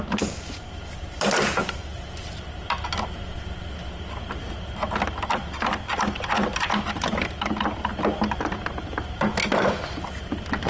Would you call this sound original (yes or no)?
yes